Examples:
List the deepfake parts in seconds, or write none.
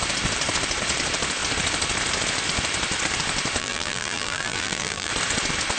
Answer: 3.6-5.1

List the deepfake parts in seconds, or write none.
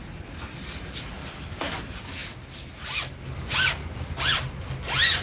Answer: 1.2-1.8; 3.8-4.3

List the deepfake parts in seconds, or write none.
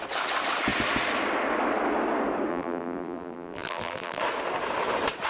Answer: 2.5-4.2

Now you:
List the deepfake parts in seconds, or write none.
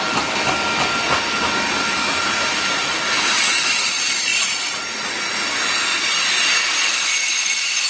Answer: 4.3-5.0; 5.9-7.9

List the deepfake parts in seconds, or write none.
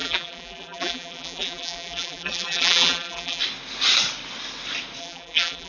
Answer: 0.0-3.4; 5.0-5.7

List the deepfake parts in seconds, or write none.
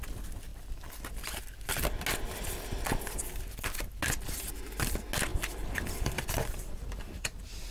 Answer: 0.5-1.1; 5.3-7.7